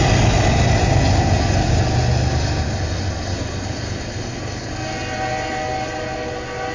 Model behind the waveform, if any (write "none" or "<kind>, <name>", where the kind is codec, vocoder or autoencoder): none